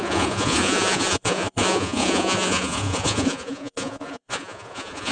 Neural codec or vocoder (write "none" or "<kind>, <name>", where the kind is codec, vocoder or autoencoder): vocoder, Vocos